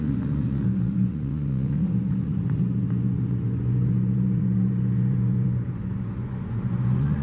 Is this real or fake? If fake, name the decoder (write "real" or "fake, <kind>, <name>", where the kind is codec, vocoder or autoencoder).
fake, vocoder, Vocos